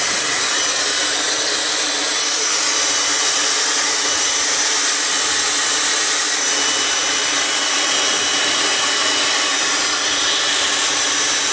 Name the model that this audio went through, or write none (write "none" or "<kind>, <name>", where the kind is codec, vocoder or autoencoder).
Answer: none